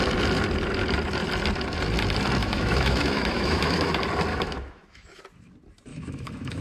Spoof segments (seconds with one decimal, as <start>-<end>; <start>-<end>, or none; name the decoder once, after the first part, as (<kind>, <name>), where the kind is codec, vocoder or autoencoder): 2.4-3.9 (autoencoder, DAC-VAE); 4.3-5.2; 5.9-6.6